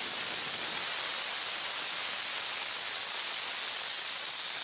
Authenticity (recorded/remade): recorded